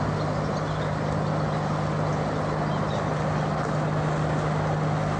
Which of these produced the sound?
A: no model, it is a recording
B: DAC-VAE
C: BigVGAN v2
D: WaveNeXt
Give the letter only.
A